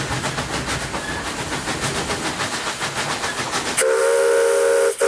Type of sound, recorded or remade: recorded